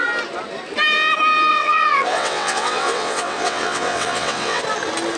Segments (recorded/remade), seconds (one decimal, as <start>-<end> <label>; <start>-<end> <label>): 0.0-1.5 recorded; 1.5-4.6 remade; 4.6-5.2 recorded